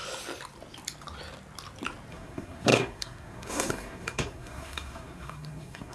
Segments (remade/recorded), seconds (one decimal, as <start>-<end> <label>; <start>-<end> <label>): 0.0-2.1 recorded; 2.1-5.9 remade